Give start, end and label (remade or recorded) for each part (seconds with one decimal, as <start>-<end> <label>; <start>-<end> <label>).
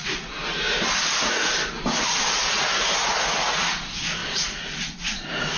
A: 0.0-0.4 remade; 0.4-1.0 recorded; 1.0-5.6 remade